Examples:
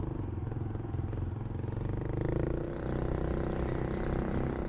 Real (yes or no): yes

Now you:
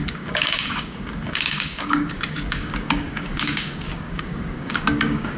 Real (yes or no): no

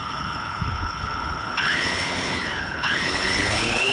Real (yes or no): no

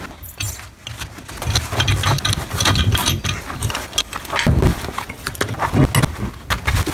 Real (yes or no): yes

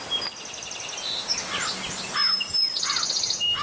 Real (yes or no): yes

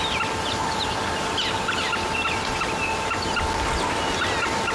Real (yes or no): yes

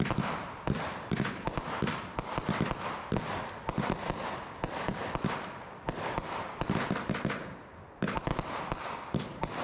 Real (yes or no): yes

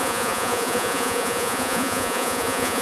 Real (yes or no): no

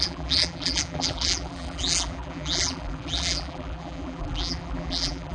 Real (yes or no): no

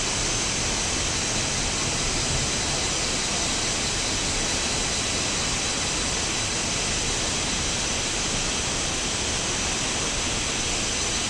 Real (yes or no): yes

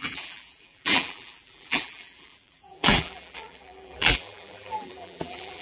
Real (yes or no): no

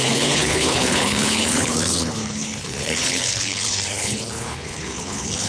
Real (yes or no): no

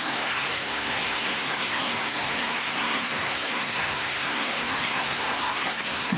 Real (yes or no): no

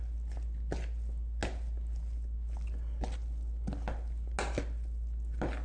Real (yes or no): yes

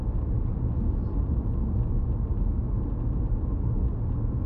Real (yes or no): yes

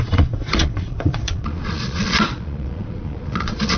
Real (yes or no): no